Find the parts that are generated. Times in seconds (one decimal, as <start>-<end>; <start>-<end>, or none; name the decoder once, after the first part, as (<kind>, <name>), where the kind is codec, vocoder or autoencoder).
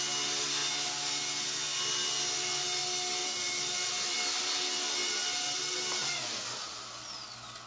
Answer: 3.2-4.4 (vocoder, BigVGAN v2); 5.0-5.6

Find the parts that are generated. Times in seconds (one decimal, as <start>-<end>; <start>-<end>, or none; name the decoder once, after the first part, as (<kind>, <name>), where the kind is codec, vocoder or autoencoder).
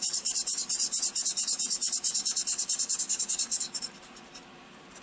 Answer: 0.0-0.8 (vocoder, BigVGAN v2); 3.8-5.0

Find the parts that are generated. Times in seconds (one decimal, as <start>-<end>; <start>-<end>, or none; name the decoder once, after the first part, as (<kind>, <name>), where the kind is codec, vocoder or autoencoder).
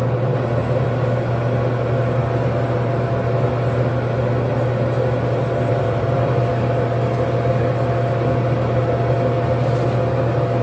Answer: 5.7-6.5 (vocoder, BigVGAN v2)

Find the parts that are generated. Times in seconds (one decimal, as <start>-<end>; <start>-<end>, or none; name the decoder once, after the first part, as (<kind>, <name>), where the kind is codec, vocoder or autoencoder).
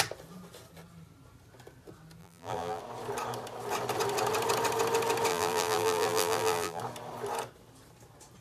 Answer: 2.2-2.8 (vocoder, BigVGAN v2); 5.3-6.8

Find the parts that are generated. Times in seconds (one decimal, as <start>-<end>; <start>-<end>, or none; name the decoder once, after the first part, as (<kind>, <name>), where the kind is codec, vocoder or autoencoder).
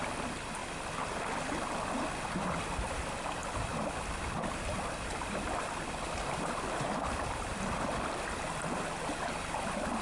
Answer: none